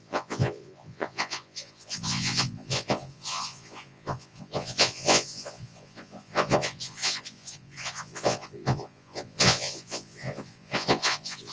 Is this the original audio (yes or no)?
no